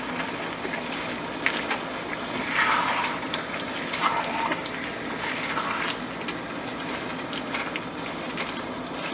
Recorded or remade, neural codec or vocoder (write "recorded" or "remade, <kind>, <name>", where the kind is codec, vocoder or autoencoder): recorded